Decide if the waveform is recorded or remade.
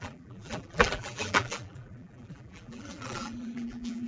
remade